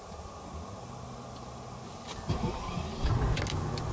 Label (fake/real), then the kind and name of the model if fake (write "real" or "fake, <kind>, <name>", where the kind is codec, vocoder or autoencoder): real